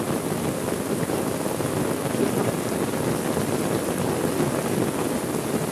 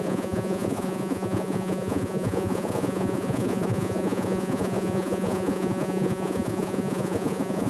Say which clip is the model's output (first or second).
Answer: second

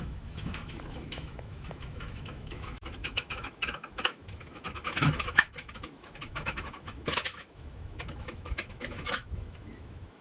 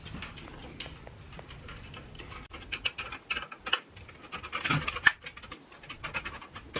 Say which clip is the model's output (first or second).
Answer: first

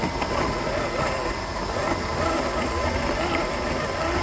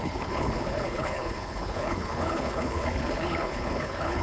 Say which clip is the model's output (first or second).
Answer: second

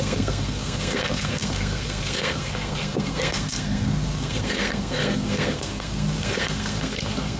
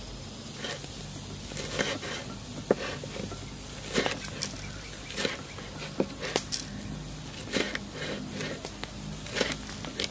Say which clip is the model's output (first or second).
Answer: first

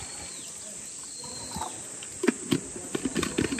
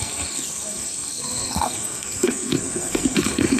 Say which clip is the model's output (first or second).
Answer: second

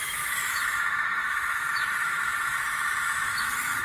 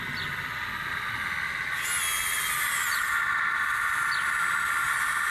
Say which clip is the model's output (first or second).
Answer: first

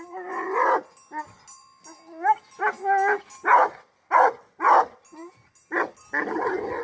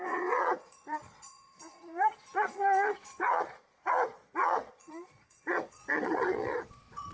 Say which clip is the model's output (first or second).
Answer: second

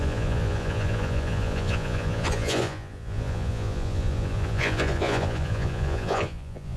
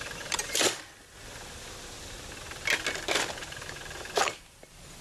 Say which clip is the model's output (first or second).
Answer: first